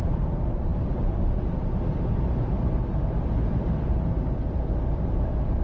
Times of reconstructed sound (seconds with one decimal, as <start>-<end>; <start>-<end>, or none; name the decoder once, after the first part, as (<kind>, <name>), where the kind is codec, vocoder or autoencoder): 0.0-5.6 (vocoder, BigVGAN v2)